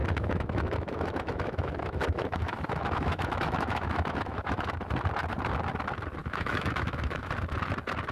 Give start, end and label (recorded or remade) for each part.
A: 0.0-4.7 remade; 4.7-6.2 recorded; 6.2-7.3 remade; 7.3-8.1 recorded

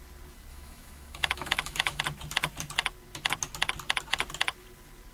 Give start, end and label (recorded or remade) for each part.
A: 0.0-0.5 recorded; 0.5-2.0 remade; 2.0-5.1 recorded

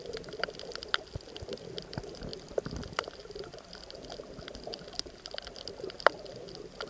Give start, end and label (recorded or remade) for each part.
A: 0.0-6.9 recorded

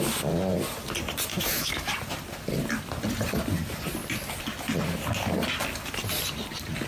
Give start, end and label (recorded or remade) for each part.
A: 0.0-1.3 recorded; 1.3-1.9 remade; 1.9-6.9 recorded

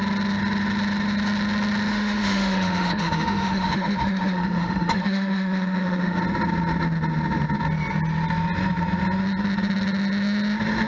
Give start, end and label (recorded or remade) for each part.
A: 0.0-1.9 recorded; 1.9-6.2 remade; 6.2-10.9 recorded